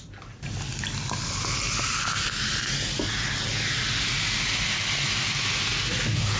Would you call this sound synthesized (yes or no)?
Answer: no